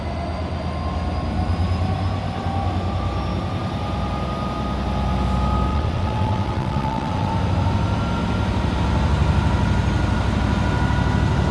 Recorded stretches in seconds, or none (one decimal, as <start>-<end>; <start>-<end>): 0.0-5.7; 7.3-11.5